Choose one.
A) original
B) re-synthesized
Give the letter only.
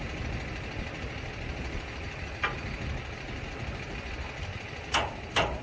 A